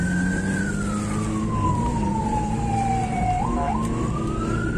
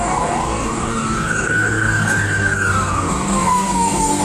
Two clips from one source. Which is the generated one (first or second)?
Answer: second